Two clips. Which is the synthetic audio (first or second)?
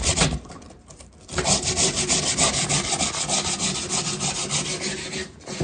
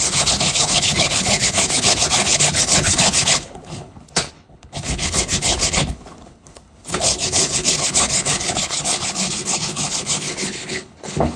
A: second